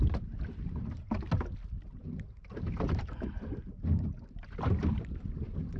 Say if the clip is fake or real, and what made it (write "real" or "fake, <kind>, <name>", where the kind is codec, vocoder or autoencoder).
real